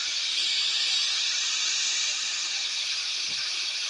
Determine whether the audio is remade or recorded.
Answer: recorded